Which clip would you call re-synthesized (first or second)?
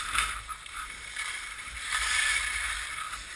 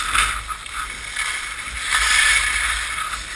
first